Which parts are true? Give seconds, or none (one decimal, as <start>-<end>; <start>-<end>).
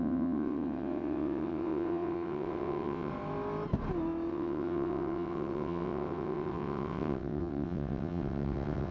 3.1-4.3